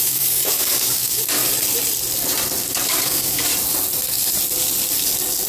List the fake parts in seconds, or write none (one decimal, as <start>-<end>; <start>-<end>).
0.0-1.4; 2.6-3.5